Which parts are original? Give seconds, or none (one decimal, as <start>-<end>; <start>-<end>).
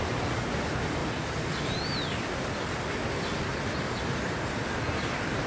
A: 0.0-5.5